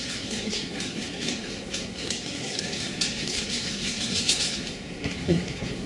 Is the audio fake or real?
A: fake